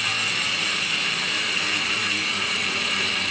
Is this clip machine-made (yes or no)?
yes